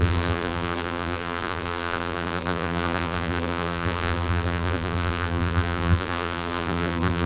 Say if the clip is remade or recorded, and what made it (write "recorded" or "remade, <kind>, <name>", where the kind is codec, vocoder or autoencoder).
remade, vocoder, BigVGAN v2